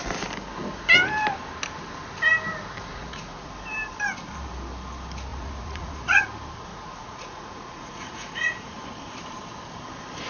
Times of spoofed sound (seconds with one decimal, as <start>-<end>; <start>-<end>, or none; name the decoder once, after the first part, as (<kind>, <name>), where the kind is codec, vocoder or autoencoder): 2.9-3.5 (vocoder, Vocos); 5.3-6.2; 6.7-8.8